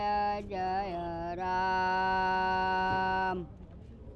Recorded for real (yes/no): yes